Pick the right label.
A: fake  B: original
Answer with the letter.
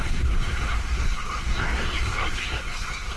A